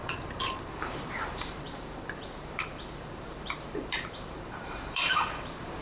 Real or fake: fake